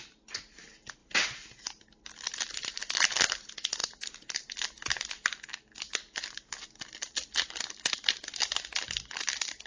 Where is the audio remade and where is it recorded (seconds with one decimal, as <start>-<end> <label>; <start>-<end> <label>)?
0.0-1.0 recorded; 1.0-2.2 remade; 2.2-2.8 recorded; 2.8-3.4 remade; 3.4-9.7 recorded